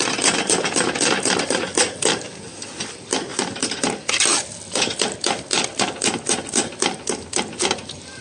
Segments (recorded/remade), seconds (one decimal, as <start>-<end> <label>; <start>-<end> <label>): 0.0-8.2 recorded